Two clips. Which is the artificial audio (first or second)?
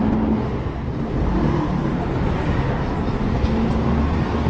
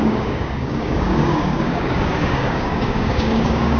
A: second